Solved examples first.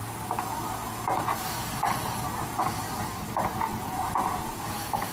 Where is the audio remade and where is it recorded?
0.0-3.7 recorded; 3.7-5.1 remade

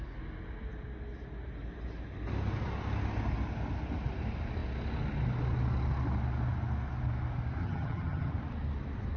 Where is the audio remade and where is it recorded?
0.0-7.6 recorded; 7.6-8.3 remade; 8.3-9.2 recorded